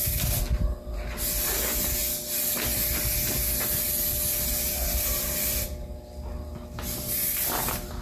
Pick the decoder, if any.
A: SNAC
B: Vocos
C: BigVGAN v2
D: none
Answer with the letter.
D